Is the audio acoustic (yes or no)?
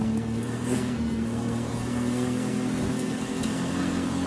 no